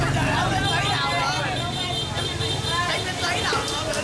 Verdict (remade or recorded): recorded